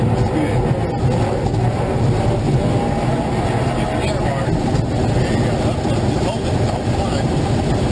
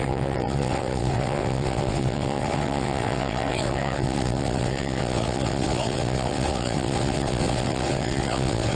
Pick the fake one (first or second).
second